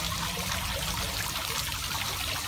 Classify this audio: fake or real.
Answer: real